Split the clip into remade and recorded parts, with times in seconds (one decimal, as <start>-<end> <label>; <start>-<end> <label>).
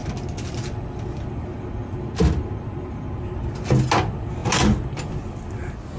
0.0-6.0 recorded